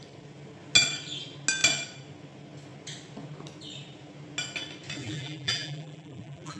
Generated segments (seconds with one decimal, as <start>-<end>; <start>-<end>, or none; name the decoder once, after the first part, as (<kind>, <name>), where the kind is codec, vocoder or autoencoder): 5.0-6.6 (vocoder, BigVGAN v2)